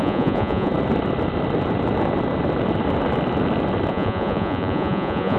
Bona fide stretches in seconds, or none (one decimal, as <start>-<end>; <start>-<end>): 0.7-3.9